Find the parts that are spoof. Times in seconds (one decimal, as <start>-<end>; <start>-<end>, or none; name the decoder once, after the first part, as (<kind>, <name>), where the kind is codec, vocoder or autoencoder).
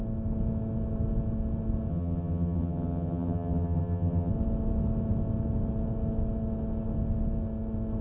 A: 1.9-4.3 (vocoder, HiFi-GAN)